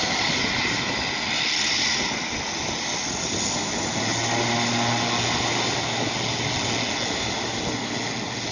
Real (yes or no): yes